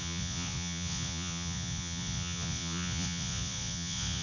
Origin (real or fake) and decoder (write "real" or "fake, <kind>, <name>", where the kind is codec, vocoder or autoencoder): fake, vocoder, Vocos